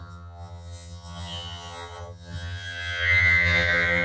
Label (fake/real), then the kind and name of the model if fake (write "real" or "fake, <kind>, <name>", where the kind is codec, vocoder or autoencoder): fake, vocoder, HiFi-GAN